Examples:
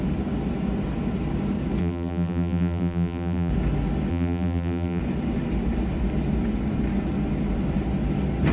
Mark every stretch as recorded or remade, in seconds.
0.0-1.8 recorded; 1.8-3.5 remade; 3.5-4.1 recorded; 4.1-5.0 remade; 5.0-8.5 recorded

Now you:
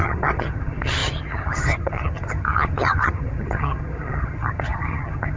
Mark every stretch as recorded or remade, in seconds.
0.0-5.4 remade

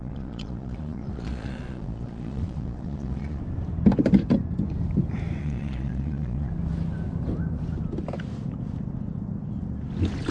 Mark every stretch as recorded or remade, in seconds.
0.0-3.4 remade; 3.4-5.4 recorded; 5.4-6.5 remade; 6.5-10.3 recorded

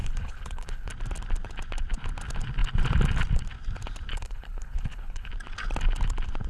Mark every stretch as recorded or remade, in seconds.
0.0-0.9 remade; 0.9-4.1 recorded; 4.1-5.3 remade; 5.3-6.5 recorded

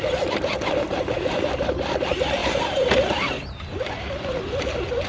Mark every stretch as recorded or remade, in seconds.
0.0-2.4 recorded; 2.4-3.3 remade; 3.3-5.1 recorded

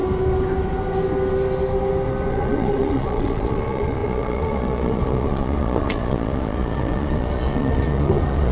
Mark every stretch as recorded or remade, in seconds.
0.0-2.3 recorded; 2.3-8.5 remade